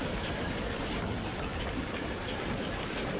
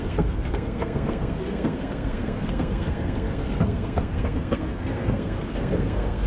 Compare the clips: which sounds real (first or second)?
first